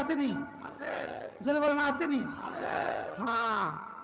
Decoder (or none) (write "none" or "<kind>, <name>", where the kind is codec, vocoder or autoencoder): vocoder, HiFi-GAN